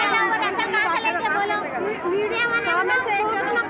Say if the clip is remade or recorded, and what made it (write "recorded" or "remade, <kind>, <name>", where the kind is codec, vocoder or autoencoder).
recorded